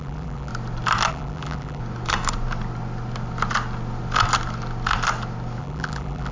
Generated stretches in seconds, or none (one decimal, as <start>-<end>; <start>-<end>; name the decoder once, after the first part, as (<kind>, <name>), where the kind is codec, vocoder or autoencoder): 0.0-0.5 (vocoder, BigVGAN v2); 1.1-1.8; 5.6-6.3